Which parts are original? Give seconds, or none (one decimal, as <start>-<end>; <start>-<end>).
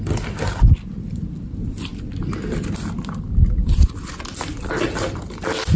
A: 0.0-5.8